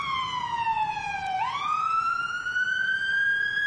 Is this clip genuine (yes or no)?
no